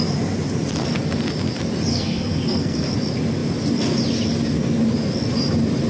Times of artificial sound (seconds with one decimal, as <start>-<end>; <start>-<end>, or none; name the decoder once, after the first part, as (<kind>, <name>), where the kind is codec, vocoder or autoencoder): 1.9-2.9 (codec, SNAC)